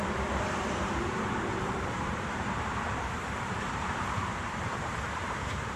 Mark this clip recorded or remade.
remade